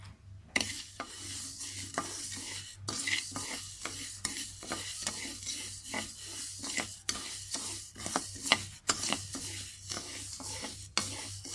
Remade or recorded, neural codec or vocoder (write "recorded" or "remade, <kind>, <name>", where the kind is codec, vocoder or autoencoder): recorded